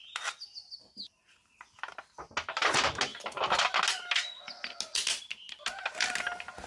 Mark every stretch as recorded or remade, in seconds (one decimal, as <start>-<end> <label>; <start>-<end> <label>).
0.0-6.7 recorded